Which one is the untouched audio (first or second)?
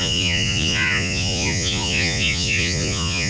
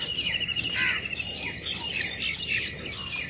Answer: second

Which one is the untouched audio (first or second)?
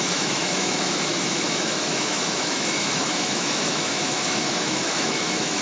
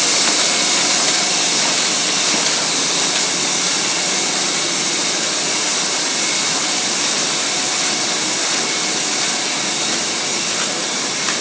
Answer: second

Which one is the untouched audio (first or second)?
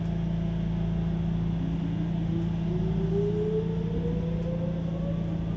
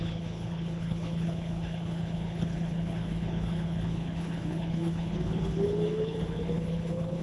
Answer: first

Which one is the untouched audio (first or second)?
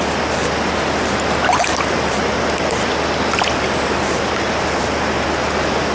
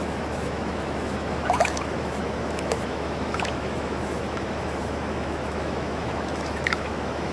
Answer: first